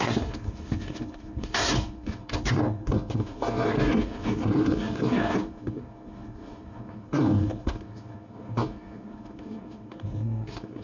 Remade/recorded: remade